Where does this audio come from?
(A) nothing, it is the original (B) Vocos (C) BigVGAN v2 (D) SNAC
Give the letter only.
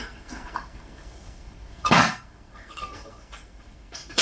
D